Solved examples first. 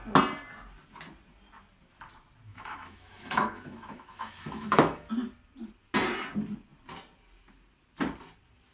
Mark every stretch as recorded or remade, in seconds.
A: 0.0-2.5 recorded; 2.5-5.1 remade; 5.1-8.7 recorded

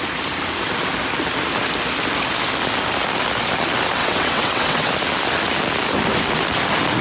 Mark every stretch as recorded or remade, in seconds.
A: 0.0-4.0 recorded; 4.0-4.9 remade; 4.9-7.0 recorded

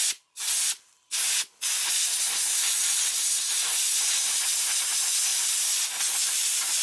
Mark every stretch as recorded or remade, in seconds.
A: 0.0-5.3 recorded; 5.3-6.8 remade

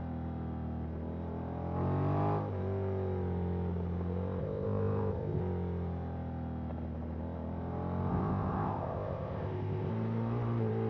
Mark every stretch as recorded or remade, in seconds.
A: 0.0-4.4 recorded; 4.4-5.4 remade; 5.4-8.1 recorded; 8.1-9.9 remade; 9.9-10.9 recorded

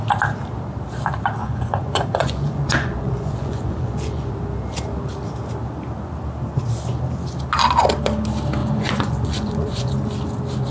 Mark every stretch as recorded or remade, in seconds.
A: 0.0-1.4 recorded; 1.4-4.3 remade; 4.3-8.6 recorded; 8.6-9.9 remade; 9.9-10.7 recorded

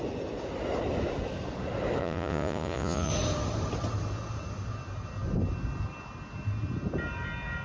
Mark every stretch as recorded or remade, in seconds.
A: 0.0-2.0 recorded; 2.0-3.1 remade; 3.1-7.6 recorded

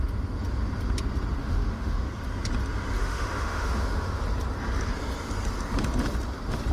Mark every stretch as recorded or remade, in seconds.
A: 0.0-1.4 recorded; 1.4-2.1 remade; 2.1-3.0 recorded; 3.0-4.2 remade; 4.2-6.7 recorded